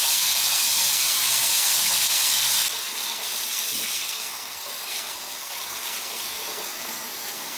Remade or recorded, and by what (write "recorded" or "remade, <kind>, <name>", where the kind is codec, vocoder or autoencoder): remade, codec, SNAC